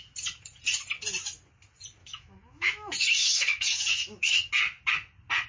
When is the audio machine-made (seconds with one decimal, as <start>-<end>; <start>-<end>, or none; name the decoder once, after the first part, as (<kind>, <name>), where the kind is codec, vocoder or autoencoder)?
2.0-4.5 (autoencoder, DAC-VAE)